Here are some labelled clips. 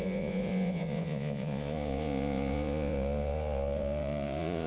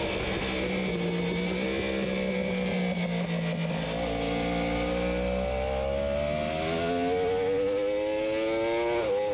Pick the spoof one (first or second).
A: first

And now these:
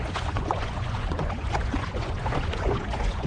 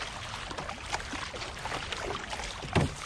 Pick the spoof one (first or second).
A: first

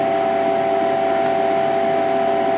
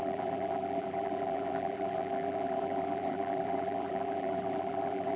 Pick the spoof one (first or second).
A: second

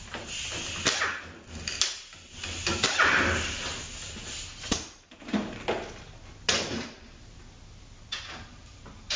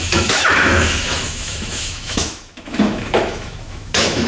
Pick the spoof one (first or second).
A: second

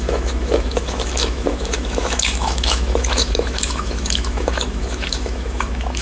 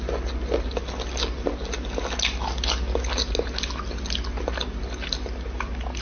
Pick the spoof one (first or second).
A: first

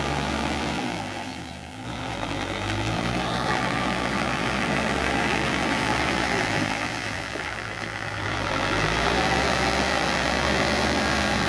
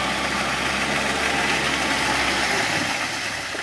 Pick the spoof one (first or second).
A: first